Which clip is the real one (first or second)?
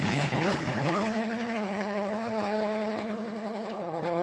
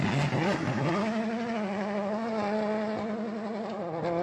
second